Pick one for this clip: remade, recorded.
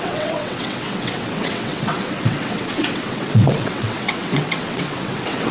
remade